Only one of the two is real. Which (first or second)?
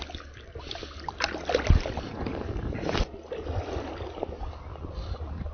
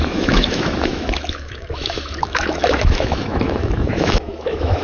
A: first